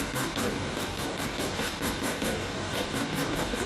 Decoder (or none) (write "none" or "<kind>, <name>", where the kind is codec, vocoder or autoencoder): codec, DAC